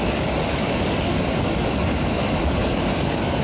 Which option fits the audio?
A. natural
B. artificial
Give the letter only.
B